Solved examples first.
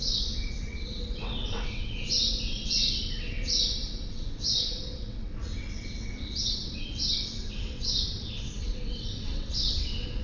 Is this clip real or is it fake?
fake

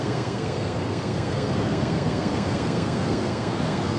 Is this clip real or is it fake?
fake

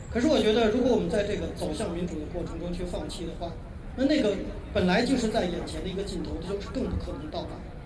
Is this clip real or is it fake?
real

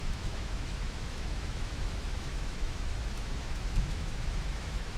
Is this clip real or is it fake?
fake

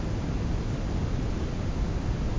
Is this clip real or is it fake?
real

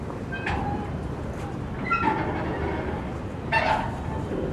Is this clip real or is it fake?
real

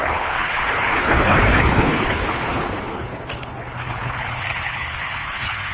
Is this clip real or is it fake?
fake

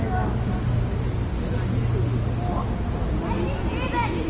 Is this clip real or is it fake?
real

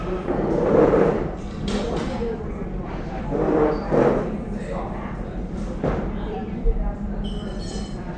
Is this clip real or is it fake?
fake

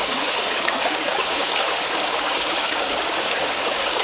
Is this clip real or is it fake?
fake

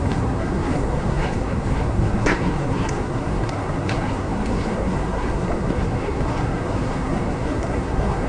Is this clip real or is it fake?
fake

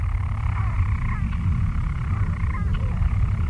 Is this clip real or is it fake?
real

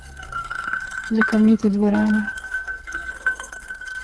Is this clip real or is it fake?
fake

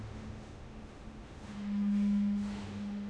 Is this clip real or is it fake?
fake